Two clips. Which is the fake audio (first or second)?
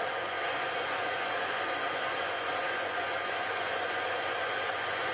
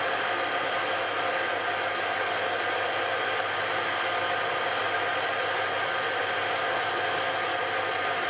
first